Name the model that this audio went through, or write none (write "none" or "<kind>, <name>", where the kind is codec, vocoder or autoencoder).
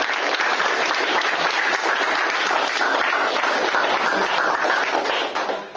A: none